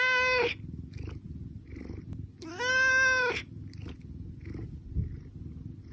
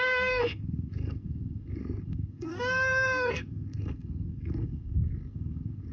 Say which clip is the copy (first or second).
second